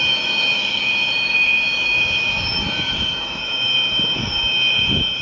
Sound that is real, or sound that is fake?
fake